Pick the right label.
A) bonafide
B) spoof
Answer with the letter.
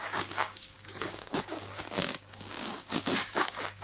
B